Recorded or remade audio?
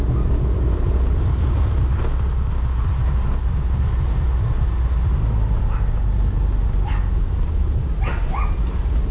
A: recorded